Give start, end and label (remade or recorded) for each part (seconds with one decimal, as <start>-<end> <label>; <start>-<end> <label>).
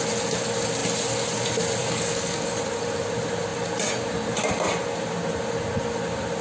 0.0-1.8 recorded; 1.8-2.6 remade; 2.6-6.4 recorded